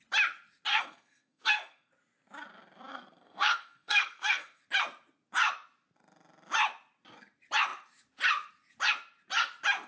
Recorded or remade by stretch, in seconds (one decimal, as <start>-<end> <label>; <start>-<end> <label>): 0.0-0.7 recorded; 0.7-1.9 remade; 1.9-2.9 recorded; 2.9-4.6 remade; 4.6-9.9 recorded